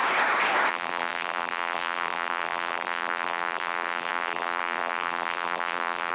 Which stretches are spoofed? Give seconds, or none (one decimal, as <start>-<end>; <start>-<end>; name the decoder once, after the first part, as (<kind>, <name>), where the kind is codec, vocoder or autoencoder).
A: 0.7-6.1 (vocoder, BigVGAN v2)